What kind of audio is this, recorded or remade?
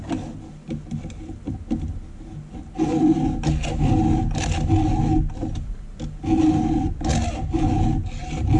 recorded